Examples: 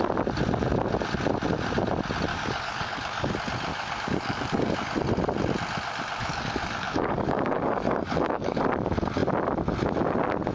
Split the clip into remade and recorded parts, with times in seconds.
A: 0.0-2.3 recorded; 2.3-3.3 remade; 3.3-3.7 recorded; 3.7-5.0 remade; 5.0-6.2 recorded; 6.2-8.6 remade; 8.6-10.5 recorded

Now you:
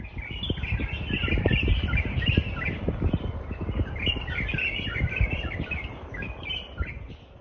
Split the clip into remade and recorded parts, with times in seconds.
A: 0.0-1.2 recorded; 1.2-5.6 remade; 5.6-7.4 recorded

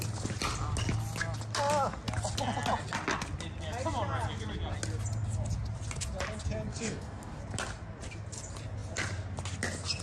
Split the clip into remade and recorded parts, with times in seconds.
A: 0.0-6.7 recorded; 6.7-7.4 remade; 7.4-10.0 recorded